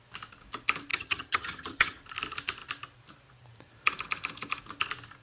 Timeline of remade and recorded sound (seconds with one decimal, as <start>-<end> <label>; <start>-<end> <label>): 0.0-0.9 recorded; 0.9-2.0 remade; 2.0-5.2 recorded

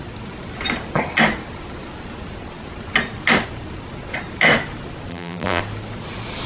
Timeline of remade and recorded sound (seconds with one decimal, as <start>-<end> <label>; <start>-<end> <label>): 0.0-5.1 recorded; 5.1-5.6 remade; 5.6-6.5 recorded